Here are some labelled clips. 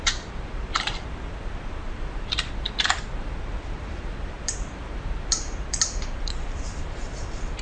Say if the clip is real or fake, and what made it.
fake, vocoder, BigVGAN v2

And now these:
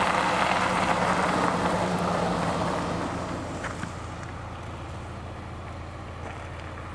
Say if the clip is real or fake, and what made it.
real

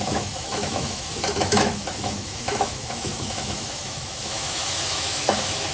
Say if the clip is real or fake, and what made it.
fake, autoencoder, DAC-VAE